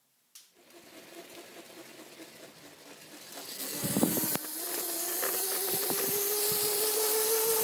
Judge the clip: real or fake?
real